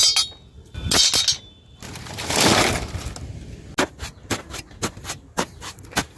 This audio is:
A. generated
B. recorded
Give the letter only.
B